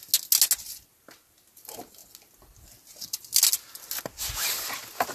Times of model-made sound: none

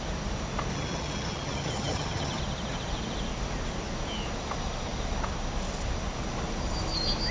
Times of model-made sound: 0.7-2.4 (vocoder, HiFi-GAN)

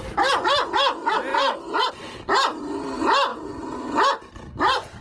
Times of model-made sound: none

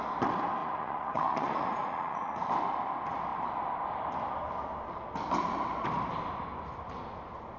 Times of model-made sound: 0.6-2.5 (vocoder, Vocos)